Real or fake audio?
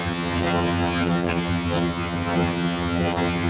fake